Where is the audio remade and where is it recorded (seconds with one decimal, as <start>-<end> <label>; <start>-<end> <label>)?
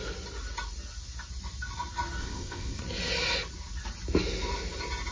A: 0.0-2.2 recorded; 2.2-2.8 remade; 2.8-5.1 recorded